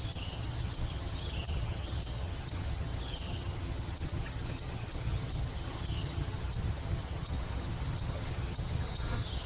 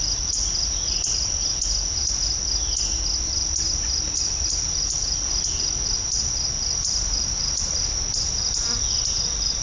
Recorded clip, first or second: second